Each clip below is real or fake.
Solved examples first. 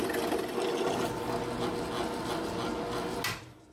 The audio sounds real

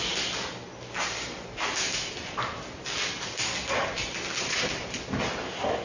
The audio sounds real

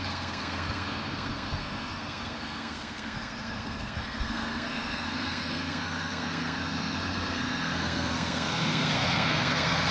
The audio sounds fake